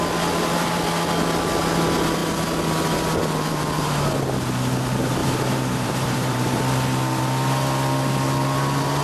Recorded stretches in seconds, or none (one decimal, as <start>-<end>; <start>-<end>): 0.0-5.2; 6.6-9.0